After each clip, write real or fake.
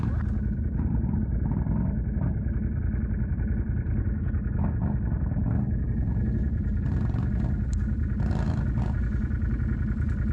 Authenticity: real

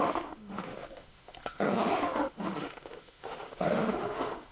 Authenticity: fake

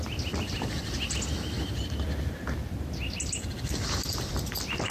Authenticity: real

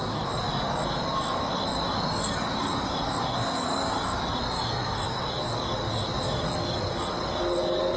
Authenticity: real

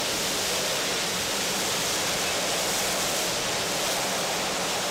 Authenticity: real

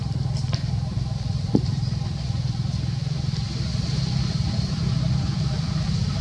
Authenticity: fake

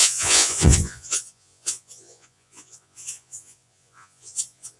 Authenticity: fake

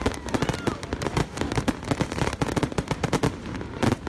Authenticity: real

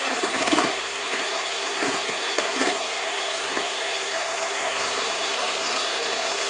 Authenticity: fake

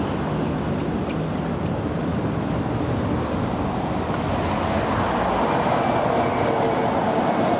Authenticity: real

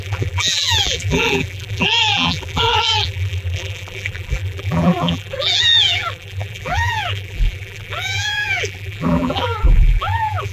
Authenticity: fake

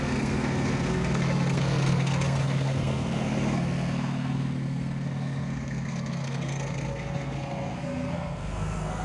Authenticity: fake